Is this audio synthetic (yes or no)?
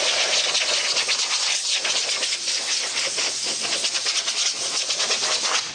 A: no